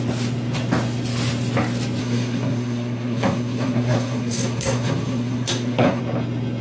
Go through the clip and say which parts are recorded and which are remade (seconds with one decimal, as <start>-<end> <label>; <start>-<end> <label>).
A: 0.0-2.0 recorded; 2.0-6.0 remade; 6.0-6.6 recorded